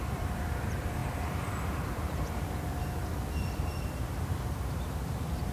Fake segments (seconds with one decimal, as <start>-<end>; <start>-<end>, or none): 0.0-5.5